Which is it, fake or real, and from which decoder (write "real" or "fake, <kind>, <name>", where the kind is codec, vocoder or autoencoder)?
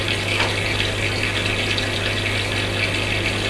real